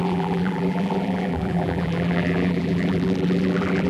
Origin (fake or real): fake